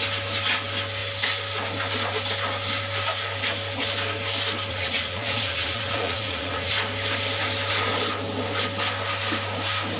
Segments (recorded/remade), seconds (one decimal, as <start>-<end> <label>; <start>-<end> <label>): 0.0-4.7 recorded; 4.7-6.7 remade; 6.7-10.0 recorded